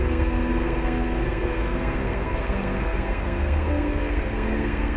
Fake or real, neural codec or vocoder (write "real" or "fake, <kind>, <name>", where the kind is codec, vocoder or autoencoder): fake, codec, SNAC